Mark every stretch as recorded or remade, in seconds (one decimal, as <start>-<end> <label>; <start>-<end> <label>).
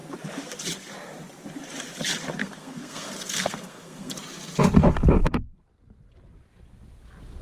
0.0-2.4 recorded; 2.4-4.1 remade; 4.1-7.4 recorded